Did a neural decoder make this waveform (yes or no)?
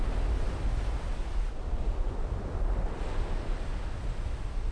no